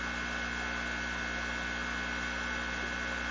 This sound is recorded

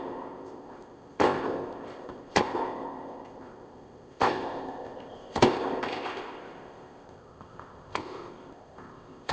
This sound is remade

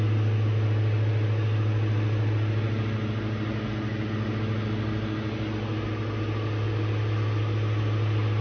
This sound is recorded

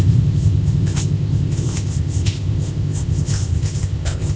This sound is remade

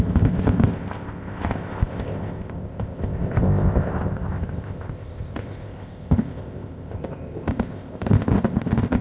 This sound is remade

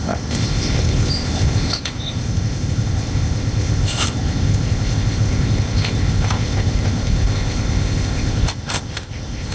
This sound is remade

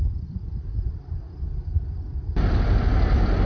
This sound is recorded